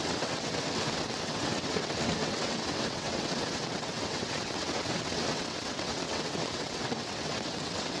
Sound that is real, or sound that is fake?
fake